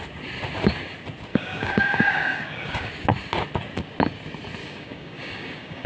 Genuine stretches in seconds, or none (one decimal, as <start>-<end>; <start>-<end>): 0.0-1.3; 2.9-4.6